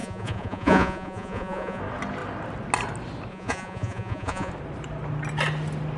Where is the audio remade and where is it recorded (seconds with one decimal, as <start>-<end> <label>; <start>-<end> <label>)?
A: 0.0-1.8 remade; 1.8-3.3 recorded; 3.3-4.5 remade; 4.5-6.0 recorded